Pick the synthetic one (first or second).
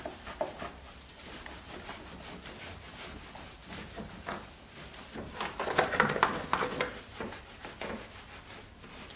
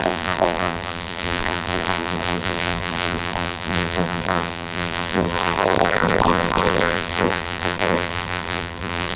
second